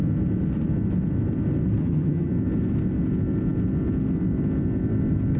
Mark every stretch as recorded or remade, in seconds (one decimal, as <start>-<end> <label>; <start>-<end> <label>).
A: 0.0-1.8 recorded; 1.8-2.3 remade; 2.3-5.4 recorded